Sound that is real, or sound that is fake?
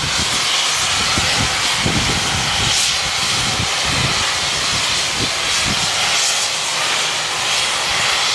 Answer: real